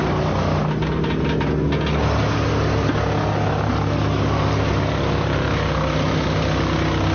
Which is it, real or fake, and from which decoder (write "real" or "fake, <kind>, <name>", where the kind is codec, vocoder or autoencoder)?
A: real